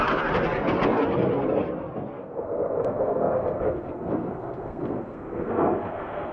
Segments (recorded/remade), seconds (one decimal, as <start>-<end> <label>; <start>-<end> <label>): 0.0-2.2 recorded; 2.2-6.3 remade